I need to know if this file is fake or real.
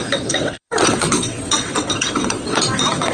fake